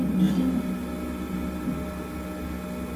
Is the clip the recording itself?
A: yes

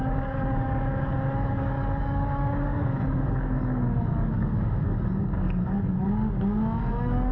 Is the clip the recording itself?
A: no